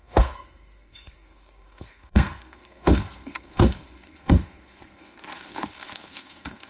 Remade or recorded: remade